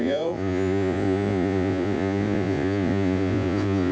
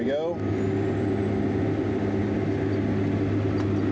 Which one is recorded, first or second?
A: second